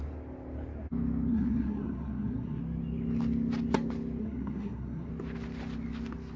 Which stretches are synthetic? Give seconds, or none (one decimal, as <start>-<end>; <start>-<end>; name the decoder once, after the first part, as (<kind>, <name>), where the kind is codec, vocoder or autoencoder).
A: 1.3-2.6 (codec, SNAC); 4.2-5.1